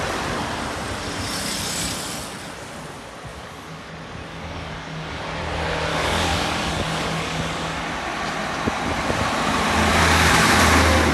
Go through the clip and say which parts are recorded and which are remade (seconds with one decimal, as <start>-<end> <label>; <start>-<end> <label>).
0.0-3.3 recorded; 3.3-3.9 remade; 3.9-4.3 recorded; 4.3-5.2 remade; 5.2-5.9 recorded; 5.9-7.8 remade; 7.8-9.9 recorded; 9.9-10.6 remade; 10.6-11.1 recorded